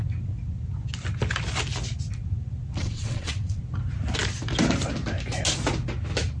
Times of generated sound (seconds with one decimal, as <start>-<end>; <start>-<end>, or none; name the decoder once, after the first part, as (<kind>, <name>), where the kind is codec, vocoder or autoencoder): 2.8-3.6 (vocoder, WaveNeXt)